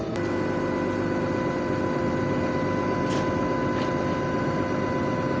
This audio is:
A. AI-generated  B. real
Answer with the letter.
B